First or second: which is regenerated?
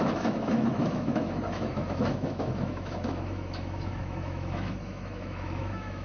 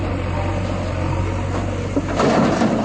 first